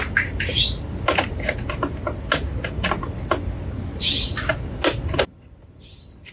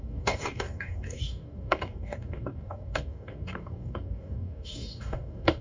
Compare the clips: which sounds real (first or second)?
first